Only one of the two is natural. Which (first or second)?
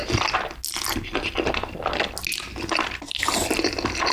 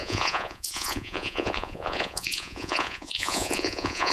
first